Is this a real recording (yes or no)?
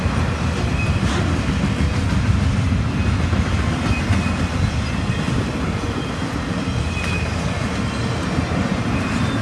yes